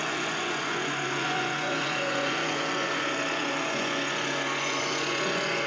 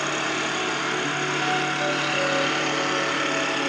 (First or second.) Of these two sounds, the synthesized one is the first